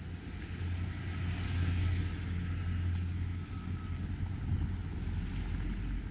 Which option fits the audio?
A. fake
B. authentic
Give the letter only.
B